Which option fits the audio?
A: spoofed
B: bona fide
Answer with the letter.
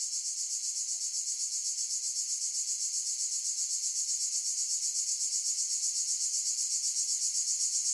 B